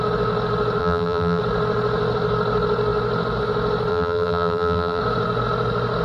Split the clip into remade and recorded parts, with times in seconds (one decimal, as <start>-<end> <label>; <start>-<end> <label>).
0.0-0.8 recorded; 0.8-1.4 remade; 1.4-3.9 recorded; 3.9-5.0 remade; 5.0-6.0 recorded